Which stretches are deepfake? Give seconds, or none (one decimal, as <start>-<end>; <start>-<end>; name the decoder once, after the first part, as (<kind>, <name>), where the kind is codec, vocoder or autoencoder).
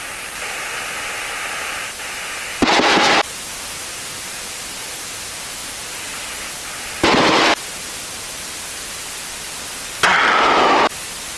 none